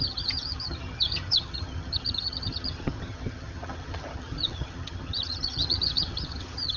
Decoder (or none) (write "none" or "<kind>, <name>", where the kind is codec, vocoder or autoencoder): vocoder, HiFi-GAN